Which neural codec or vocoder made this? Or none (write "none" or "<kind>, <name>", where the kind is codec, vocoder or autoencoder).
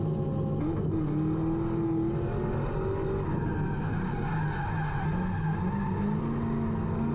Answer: none